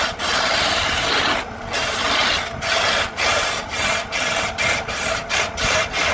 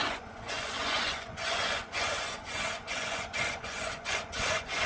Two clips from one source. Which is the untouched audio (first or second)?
first